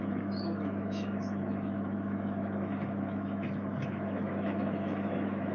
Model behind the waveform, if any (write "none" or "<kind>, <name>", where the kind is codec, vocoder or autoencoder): autoencoder, DAC-VAE